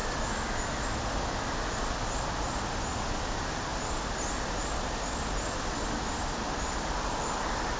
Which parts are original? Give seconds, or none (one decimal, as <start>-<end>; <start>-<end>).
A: 0.0-7.8